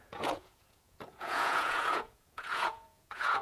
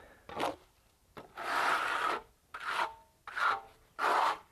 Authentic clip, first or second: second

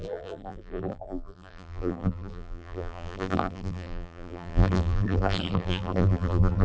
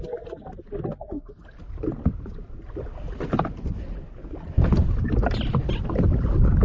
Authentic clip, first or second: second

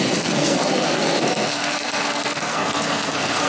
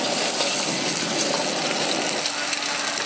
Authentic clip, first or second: second